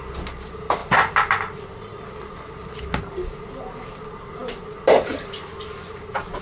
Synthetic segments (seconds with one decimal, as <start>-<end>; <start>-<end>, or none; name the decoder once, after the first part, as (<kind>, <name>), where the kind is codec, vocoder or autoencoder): none